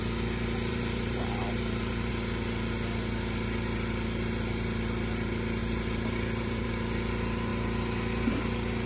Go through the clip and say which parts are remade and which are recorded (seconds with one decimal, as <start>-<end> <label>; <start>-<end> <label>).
0.0-0.7 recorded; 0.7-2.1 remade; 2.1-5.6 recorded; 5.6-6.7 remade; 6.7-8.9 recorded